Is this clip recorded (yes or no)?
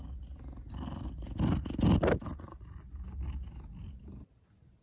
yes